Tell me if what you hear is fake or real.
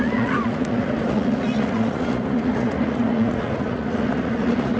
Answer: fake